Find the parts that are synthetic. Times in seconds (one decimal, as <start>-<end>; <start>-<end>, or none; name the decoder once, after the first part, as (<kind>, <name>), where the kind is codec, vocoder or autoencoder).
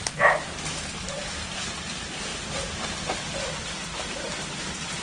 none